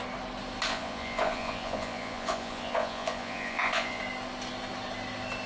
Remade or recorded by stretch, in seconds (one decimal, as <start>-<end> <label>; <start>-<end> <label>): 0.0-0.7 recorded; 0.7-4.0 remade; 4.0-5.5 recorded

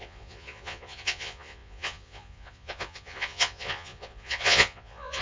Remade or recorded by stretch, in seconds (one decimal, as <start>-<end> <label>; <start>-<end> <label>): 0.0-5.2 remade